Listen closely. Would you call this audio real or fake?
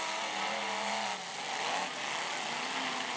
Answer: real